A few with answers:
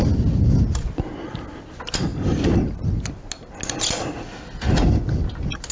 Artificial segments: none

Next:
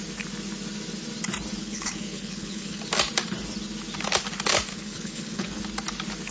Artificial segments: 1.6-2.8 (codec, HILCodec); 4.7-5.6

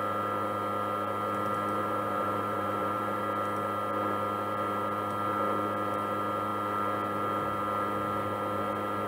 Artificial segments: 1.8-3.2 (vocoder, BigVGAN v2)

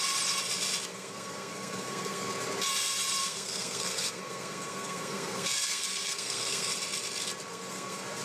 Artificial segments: 0.9-2.3 (codec, SNAC); 3.2-6.7; 7.5-8.2

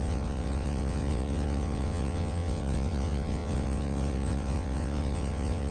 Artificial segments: 0.0-5.7 (vocoder, WaveNeXt)

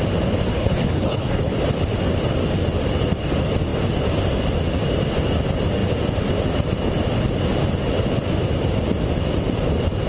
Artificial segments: 0.5-1.5 (codec, HILCodec)

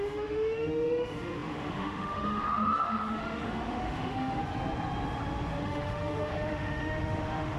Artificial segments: 0.0-4.4 (autoencoder, DAC-VAE); 5.6-7.6

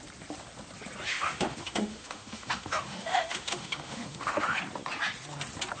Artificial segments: 1.1-4.6 (autoencoder, DAC-VAE)